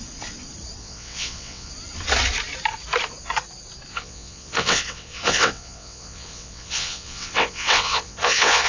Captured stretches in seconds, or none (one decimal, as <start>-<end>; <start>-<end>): 0.0-0.8; 1.7-3.9